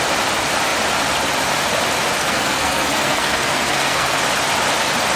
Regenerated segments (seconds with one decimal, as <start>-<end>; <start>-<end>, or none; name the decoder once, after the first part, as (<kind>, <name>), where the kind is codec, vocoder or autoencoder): 2.2-4.2 (codec, SNAC)